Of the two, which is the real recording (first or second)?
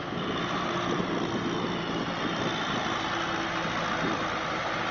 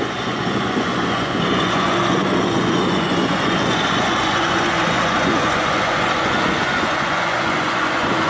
first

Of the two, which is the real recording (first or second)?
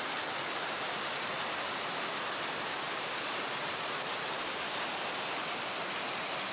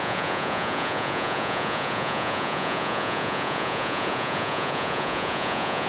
first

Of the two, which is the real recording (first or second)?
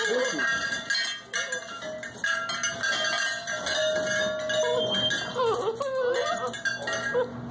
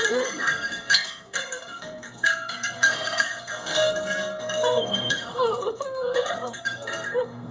first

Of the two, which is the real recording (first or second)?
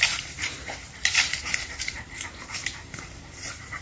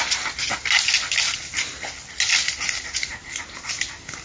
second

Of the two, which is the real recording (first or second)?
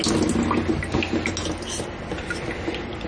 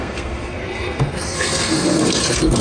first